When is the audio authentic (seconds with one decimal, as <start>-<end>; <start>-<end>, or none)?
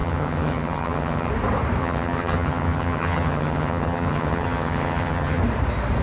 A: 1.3-1.8; 5.4-6.0